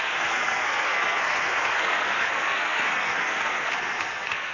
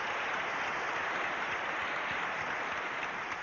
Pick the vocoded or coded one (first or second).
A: first